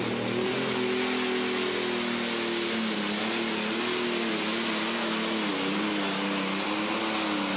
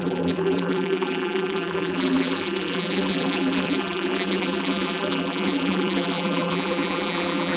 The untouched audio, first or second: first